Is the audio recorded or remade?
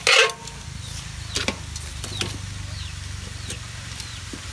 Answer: recorded